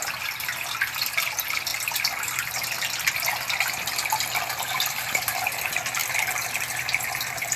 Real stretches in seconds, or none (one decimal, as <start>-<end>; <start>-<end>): 0.0-7.6